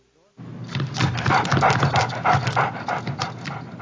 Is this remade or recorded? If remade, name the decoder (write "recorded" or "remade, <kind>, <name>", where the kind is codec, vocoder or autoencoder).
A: recorded